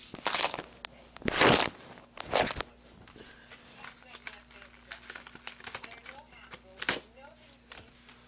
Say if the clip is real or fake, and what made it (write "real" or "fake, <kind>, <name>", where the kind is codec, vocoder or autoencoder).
real